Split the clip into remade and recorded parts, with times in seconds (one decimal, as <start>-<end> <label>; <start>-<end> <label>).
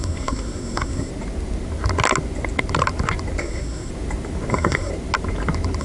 0.0-1.1 remade; 1.1-3.4 recorded; 3.4-3.9 remade; 3.9-4.5 recorded; 4.5-4.9 remade; 4.9-5.8 recorded